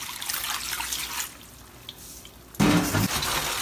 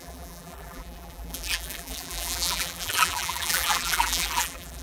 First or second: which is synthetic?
second